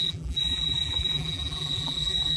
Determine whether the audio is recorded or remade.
remade